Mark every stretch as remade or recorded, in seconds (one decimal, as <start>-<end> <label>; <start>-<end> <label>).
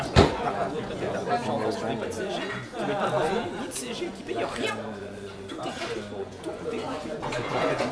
0.0-1.2 remade; 1.2-4.6 recorded; 4.6-5.6 remade; 5.6-6.2 recorded; 6.2-7.9 remade